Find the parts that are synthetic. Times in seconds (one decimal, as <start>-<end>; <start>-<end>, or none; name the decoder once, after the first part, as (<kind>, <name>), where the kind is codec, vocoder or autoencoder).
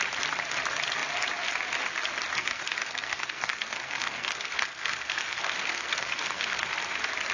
2.3-6.7 (codec, SNAC)